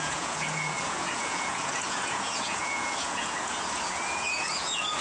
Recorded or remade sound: remade